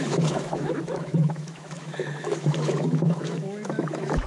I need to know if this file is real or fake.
fake